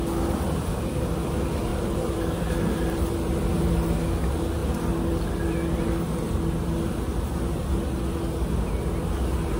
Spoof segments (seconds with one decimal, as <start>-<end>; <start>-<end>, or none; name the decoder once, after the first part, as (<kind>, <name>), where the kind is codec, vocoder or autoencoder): 1.7-3.7 (vocoder, BigVGAN v2); 7.1-7.6

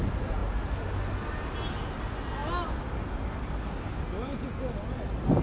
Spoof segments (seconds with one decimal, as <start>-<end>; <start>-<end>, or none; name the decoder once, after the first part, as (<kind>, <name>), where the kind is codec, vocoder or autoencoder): none

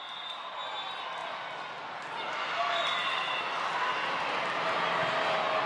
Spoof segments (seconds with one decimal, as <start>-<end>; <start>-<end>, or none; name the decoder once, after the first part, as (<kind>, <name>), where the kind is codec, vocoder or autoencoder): none

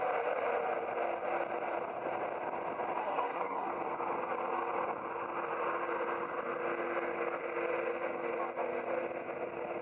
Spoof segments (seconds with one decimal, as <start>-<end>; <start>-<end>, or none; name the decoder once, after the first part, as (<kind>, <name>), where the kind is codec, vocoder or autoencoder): 3.0-3.7 (codec, SNAC)

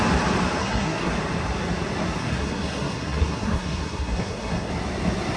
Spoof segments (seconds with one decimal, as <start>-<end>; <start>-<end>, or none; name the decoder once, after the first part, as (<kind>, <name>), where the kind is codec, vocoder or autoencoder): 0.6-1.1 (codec, SNAC); 2.2-4.7

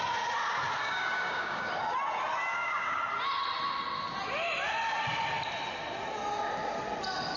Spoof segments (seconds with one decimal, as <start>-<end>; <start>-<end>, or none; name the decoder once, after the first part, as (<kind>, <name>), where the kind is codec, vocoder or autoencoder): 0.8-1.7 (codec, DAC); 2.5-3.0

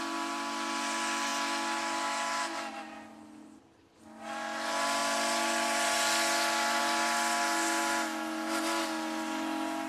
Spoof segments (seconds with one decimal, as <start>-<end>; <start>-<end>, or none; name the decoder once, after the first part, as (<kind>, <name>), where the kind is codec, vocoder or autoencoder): none